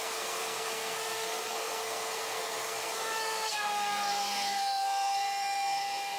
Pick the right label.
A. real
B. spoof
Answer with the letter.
B